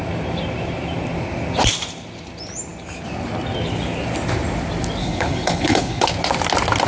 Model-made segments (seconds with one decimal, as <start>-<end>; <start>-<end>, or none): 5.0-6.1